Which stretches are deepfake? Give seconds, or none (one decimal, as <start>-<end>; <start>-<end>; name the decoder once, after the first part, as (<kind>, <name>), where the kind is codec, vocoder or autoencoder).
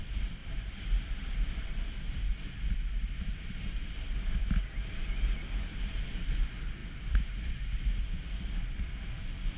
0.4-2.2 (vocoder, BigVGAN v2)